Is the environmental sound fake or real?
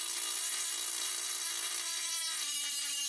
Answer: real